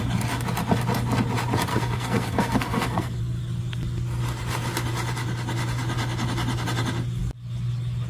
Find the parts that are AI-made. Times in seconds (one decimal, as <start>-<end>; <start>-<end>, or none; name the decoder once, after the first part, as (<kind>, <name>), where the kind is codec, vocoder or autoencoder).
1.7-3.2 (codec, SNAC)